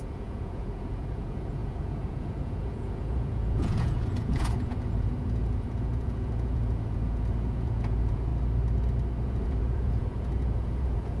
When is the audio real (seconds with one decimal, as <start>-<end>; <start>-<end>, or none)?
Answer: 8.3-9.2

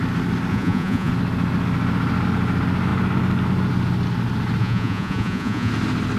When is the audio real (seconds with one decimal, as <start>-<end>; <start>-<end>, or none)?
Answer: 0.0-0.5; 1.1-4.6; 5.7-6.2

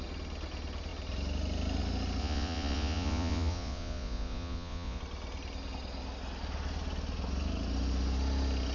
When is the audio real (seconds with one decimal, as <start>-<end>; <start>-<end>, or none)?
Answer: 0.0-2.2; 5.0-8.7

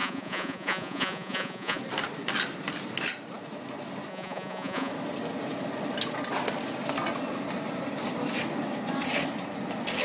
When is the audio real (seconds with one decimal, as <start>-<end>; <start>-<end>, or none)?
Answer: 1.8-4.1; 4.9-10.0

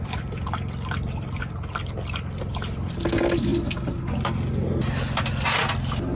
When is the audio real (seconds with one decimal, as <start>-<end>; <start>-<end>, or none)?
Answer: 0.0-6.2

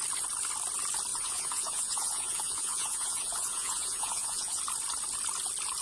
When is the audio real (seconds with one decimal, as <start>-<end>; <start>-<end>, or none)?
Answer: 0.0-1.1; 4.6-5.8